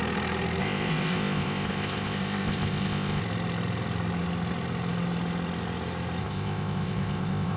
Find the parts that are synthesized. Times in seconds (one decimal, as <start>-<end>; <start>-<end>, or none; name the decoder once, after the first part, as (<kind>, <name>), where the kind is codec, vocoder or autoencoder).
0.6-3.2 (codec, ZipCodec); 6.2-7.6